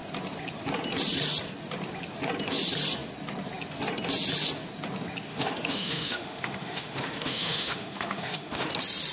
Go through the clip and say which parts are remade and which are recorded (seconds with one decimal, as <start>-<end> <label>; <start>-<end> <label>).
0.0-5.3 recorded; 5.3-8.7 remade; 8.7-9.1 recorded